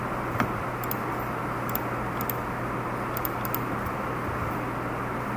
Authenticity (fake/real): real